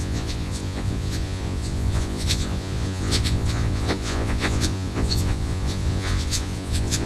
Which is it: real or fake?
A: fake